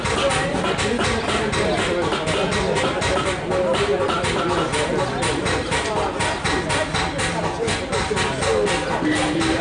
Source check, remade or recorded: recorded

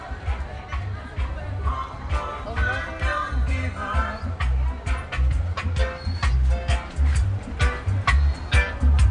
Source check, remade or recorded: recorded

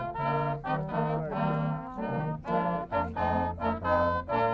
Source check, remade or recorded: recorded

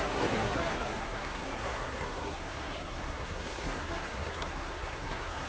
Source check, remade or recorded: remade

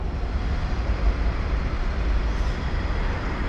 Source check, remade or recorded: recorded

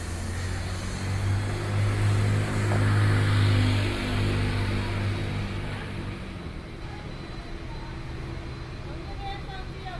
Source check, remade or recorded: recorded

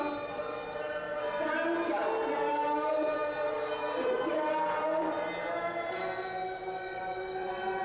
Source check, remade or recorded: recorded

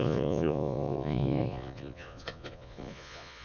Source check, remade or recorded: remade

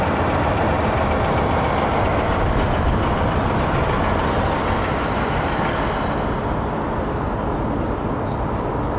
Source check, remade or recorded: recorded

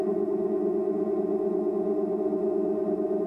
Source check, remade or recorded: recorded